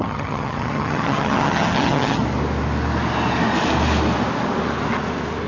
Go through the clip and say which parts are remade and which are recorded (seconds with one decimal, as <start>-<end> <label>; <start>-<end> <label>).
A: 0.0-2.2 remade; 2.2-5.5 recorded